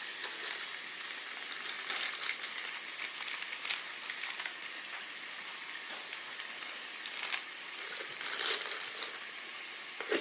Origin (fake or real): real